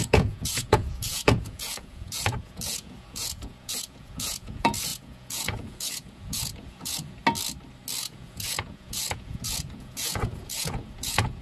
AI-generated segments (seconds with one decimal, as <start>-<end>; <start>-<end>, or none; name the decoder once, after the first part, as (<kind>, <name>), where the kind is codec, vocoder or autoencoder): 0.0-7.2 (vocoder, Vocos); 8.0-11.4

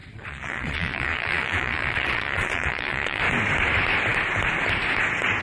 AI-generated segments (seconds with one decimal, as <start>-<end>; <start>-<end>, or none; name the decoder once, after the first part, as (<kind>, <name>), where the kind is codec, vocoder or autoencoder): 0.0-3.2 (vocoder, Vocos)